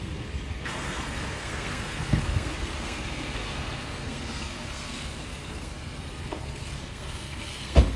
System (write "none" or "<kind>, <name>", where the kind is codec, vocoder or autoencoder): codec, SNAC